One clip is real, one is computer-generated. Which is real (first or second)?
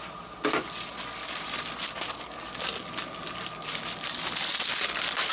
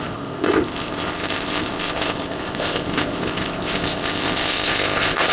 first